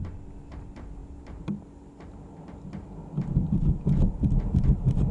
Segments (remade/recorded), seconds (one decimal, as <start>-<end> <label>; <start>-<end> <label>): 0.0-5.1 recorded